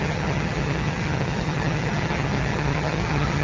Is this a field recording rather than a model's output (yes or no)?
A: no